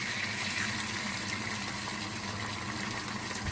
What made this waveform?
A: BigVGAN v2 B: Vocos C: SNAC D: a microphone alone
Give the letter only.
D